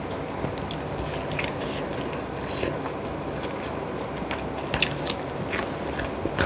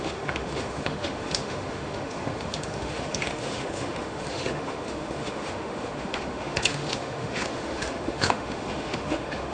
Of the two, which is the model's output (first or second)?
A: second